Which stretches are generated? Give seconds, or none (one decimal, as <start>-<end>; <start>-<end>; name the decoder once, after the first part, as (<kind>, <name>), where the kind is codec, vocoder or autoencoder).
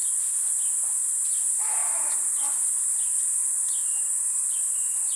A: none